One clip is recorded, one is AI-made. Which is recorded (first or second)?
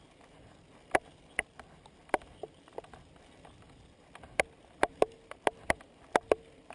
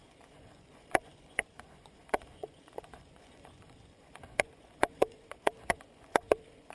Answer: first